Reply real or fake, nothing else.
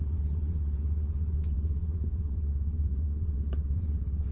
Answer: fake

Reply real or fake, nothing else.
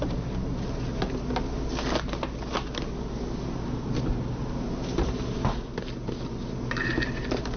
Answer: real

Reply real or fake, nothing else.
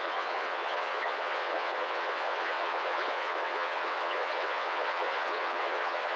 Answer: fake